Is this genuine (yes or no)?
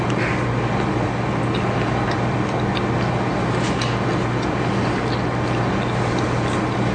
yes